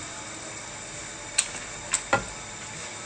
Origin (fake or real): real